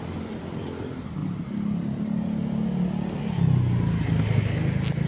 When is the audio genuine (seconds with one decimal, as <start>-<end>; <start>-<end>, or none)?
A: 0.0-5.1